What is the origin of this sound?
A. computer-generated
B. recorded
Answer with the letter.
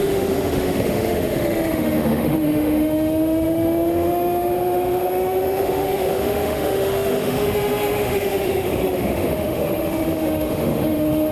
A